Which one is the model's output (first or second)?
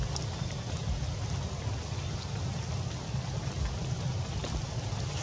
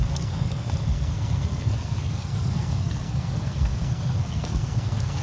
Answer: second